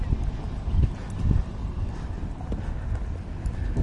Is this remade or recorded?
recorded